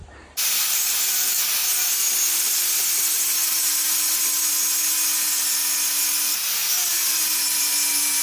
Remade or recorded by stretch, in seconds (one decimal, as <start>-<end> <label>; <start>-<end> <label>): 0.0-8.2 recorded